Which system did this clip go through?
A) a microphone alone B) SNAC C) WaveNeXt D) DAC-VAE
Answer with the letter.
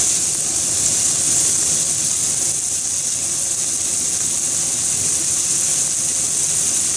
A